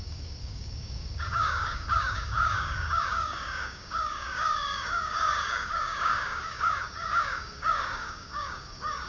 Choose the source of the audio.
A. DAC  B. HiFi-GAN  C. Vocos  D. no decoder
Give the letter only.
A